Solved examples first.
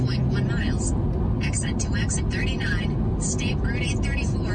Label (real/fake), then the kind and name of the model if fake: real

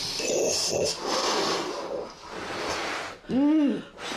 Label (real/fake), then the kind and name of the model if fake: real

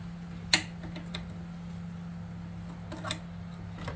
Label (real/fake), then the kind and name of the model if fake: real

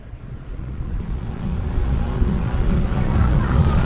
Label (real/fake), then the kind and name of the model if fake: fake, vocoder, Vocos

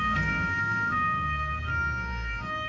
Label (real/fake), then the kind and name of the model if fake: fake, codec, SNAC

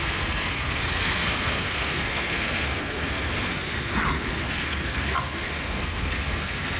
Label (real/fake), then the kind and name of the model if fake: fake, codec, SNAC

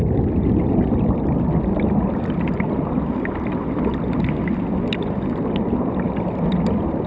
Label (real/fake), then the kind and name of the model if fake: real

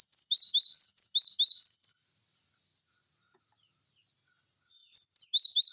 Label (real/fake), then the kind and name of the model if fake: real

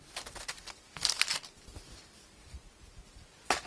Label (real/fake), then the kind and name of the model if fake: real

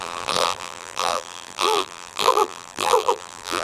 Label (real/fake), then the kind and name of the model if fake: fake, vocoder, BigVGAN v2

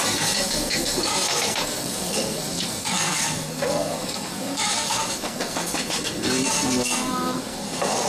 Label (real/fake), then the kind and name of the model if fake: fake, codec, SNAC